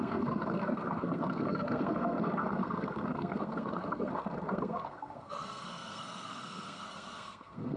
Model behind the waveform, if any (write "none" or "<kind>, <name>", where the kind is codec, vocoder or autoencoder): codec, SNAC